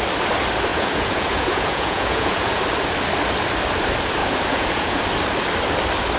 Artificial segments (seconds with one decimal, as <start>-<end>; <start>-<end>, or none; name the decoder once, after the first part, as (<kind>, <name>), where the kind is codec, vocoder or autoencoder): 0.7-2.6 (vocoder, Vocos); 4.2-5.0